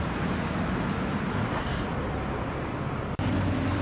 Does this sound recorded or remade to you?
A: recorded